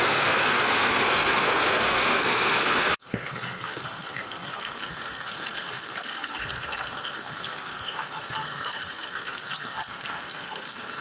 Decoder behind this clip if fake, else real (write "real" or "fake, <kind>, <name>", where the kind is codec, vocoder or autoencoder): fake, codec, SNAC